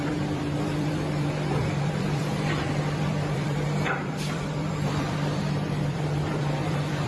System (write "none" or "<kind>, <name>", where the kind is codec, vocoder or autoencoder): vocoder, BigVGAN v2